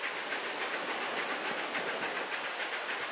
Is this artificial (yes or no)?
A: no